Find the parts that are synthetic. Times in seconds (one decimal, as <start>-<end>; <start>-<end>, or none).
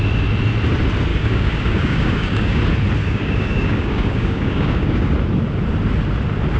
1.1-2.6; 3.0-5.1